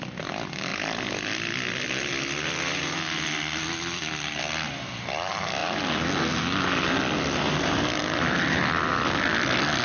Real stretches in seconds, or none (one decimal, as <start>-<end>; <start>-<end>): 0.0-9.8